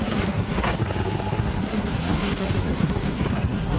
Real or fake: fake